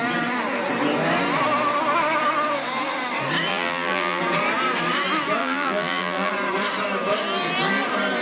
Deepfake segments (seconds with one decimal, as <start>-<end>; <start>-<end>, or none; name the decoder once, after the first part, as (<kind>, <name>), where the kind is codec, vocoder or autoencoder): 3.5-4.2 (vocoder, BigVGAN v2); 5.4-6.3